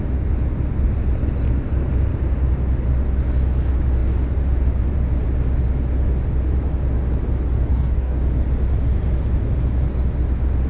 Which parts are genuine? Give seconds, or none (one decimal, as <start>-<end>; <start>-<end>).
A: 0.0-7.7; 8.2-10.7